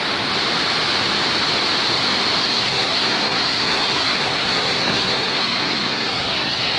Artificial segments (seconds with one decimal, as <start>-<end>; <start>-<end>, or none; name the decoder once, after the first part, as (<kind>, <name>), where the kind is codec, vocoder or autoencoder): 2.4-6.8 (codec, SNAC)